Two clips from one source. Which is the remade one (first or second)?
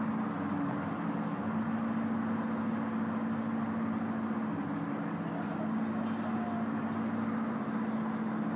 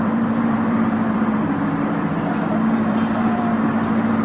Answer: second